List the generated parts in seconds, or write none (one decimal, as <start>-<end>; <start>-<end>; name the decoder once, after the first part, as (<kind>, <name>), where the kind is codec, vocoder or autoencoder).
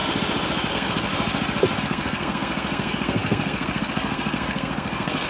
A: 0.7-1.1 (codec, SNAC); 1.8-5.3